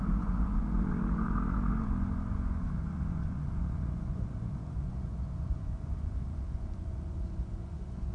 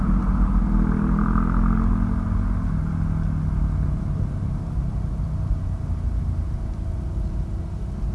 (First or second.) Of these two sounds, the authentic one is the second